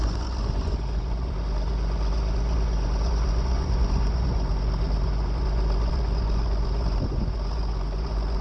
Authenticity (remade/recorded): remade